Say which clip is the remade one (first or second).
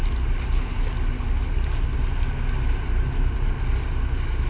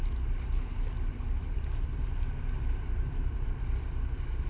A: second